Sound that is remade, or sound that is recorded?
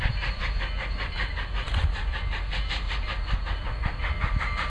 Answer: remade